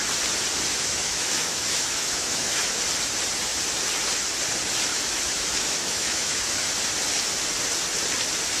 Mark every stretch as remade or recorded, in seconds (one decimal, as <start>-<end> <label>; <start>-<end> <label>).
0.0-0.7 recorded; 0.7-2.8 remade; 2.8-4.9 recorded; 4.9-6.7 remade; 6.7-8.6 recorded